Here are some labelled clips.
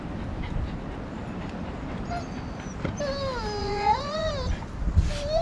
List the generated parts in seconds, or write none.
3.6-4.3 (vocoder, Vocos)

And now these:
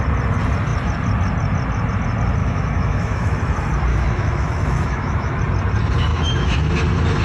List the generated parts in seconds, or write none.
2.4-3.4 (autoencoder, DAC-VAE); 3.9-5.4; 6.1-6.7

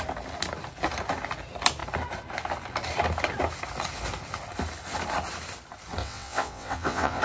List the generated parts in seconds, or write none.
6.0-7.2 (vocoder, WaveNeXt)

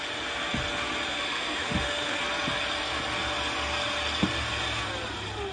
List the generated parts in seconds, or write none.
1.1-2.2 (autoencoder, DAC-VAE)

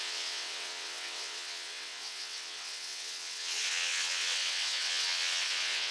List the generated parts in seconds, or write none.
0.0-5.9 (vocoder, WaveNeXt)

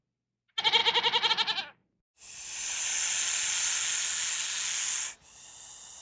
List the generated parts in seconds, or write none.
0.8-1.3 (vocoder, BigVGAN v2)

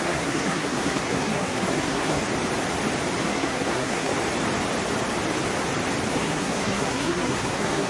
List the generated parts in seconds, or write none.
0.0-2.2 (codec, SNAC); 3.2-4.1; 6.1-7.9

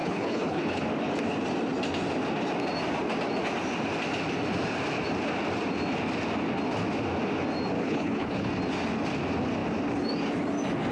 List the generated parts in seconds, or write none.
0.0-0.8 (codec, HILCodec); 7.8-8.5